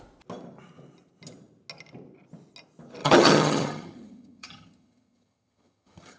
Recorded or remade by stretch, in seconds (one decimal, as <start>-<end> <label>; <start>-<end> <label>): 0.0-3.0 recorded; 3.0-6.2 remade